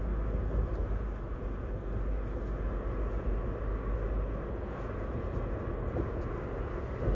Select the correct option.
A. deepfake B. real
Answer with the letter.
B